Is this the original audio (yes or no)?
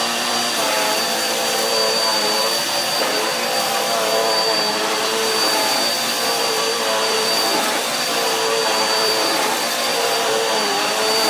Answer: no